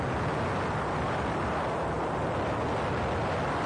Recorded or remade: recorded